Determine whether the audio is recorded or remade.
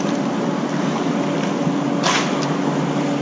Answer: recorded